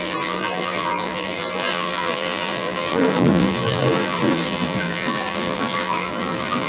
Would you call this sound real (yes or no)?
no